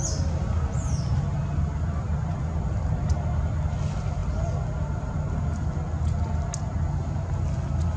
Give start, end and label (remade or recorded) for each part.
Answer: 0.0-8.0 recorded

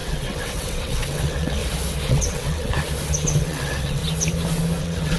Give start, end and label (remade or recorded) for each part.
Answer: 0.0-1.6 remade; 1.6-2.1 recorded; 2.1-2.7 remade; 2.7-3.4 recorded; 3.4-4.0 remade; 4.0-4.8 recorded; 4.8-5.2 remade

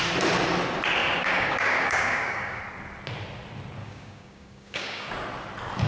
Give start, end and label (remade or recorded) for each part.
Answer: 0.0-1.0 recorded; 1.0-2.6 remade; 2.6-3.8 recorded; 3.8-5.1 remade; 5.1-5.9 recorded

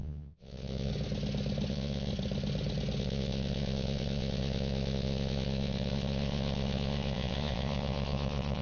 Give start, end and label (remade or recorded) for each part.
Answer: 0.0-0.9 remade; 0.9-1.7 recorded; 1.7-2.1 remade; 2.1-3.0 recorded; 3.0-8.6 remade

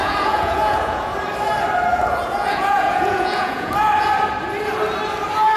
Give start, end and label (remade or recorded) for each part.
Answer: 0.0-1.1 remade; 1.1-1.9 recorded; 1.9-3.7 remade; 3.7-5.6 recorded

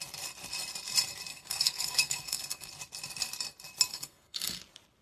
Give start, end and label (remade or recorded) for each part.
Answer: 0.0-1.3 recorded; 1.3-2.7 remade; 2.7-3.9 recorded; 3.9-4.6 remade; 4.6-5.0 recorded

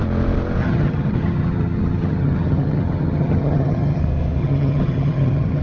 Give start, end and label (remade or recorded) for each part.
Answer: 0.0-0.6 recorded; 0.6-4.0 remade; 4.0-4.4 recorded; 4.4-5.6 remade